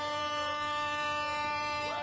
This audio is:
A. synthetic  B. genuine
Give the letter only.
A